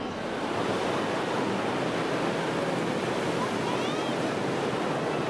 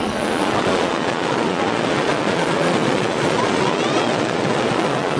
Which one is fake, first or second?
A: second